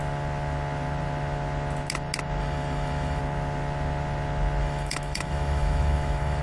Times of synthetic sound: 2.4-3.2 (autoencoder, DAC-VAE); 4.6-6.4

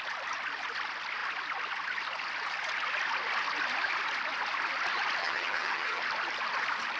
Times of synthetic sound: 5.2-6.0 (vocoder, HiFi-GAN)

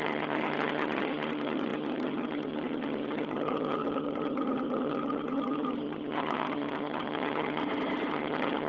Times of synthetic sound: 0.0-7.6 (vocoder, HiFi-GAN); 8.1-8.7

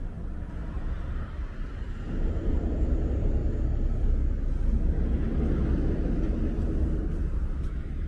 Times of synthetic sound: 0.0-0.6 (vocoder, BigVGAN v2); 2.3-3.4; 7.2-8.1

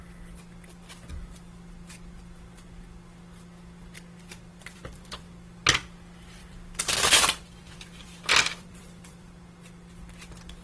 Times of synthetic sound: 4.5-5.2 (vocoder, BigVGAN v2); 6.4-9.3

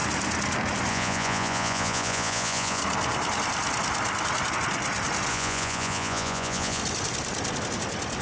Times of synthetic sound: 0.9-2.8 (vocoder, Vocos); 5.3-6.8

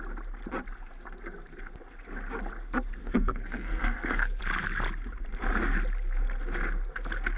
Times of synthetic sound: 3.0-4.4 (codec, SNAC)